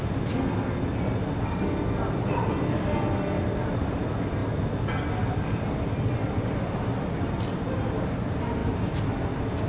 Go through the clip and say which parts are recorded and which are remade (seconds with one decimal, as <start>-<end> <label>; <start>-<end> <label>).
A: 0.0-9.7 recorded